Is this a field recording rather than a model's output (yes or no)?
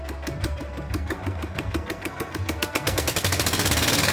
no